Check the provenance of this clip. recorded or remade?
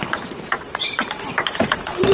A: remade